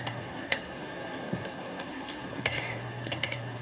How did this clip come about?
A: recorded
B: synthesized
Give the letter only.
B